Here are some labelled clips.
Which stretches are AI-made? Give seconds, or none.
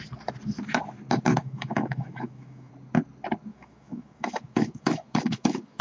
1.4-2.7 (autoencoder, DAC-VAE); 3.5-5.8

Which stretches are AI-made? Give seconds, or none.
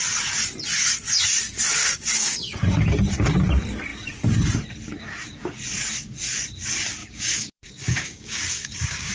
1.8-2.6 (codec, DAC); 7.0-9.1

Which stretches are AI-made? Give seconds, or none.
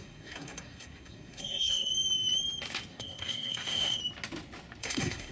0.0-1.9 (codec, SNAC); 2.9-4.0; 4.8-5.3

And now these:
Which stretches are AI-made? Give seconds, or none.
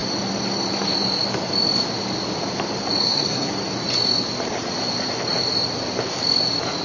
3.0-3.5 (codec, SNAC)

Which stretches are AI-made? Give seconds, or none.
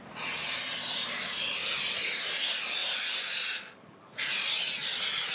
none